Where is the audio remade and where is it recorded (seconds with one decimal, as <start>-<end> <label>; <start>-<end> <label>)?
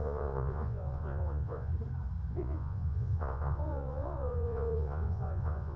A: 0.0-1.7 remade; 1.7-2.3 recorded; 2.3-5.8 remade